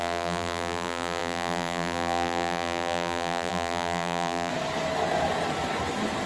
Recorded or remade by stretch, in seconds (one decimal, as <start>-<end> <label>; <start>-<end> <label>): 0.0-4.5 remade; 4.5-6.3 recorded